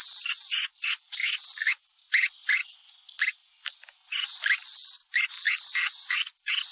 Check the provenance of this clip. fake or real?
real